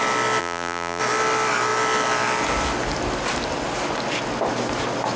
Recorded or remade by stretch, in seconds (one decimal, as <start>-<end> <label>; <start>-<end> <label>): 0.0-0.4 recorded; 0.4-1.0 remade; 1.0-5.2 recorded